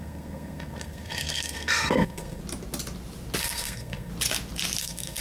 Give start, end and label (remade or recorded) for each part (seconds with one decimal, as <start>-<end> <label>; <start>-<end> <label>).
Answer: 0.0-2.4 remade; 2.4-3.4 recorded; 3.4-4.1 remade; 4.1-4.8 recorded; 4.8-5.2 remade